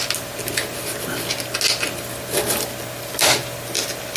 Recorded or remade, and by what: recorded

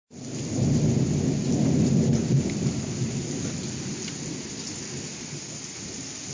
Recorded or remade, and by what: recorded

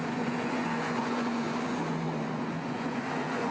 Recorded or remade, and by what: remade, vocoder, Vocos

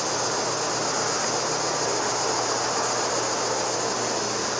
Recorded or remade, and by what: recorded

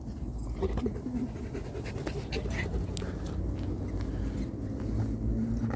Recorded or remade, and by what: recorded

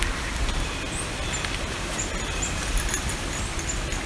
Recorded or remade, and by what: recorded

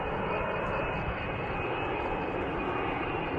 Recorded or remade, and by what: remade, vocoder, BigVGAN v2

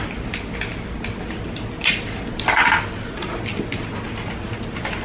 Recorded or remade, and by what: recorded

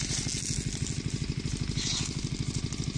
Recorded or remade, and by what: recorded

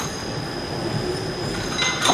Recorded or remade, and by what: recorded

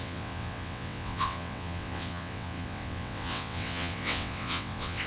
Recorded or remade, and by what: remade, vocoder, WaveNeXt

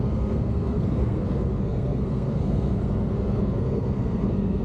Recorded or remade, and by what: remade, codec, SNAC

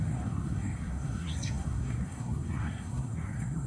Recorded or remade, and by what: remade, codec, SNAC